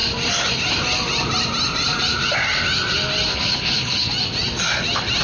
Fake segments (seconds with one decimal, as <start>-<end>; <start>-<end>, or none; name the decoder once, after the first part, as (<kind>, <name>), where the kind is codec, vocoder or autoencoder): 3.3-4.1 (codec, HILCodec)

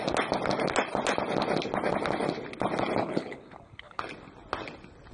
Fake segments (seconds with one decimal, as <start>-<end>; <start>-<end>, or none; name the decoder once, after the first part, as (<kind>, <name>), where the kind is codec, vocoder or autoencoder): 3.0-4.0 (codec, HILCodec)

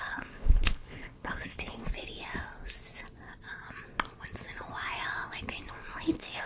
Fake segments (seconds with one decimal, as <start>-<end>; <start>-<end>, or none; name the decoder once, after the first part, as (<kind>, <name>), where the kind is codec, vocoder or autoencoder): 0.0-1.8 (codec, HILCodec); 5.7-6.5

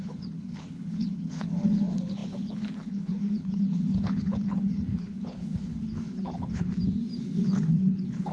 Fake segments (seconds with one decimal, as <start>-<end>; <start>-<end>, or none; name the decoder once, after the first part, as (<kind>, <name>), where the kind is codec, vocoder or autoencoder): 0.0-6.7 (codec, HILCodec); 7.2-8.3